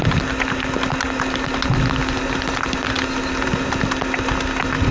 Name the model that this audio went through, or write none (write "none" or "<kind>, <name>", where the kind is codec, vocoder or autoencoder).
none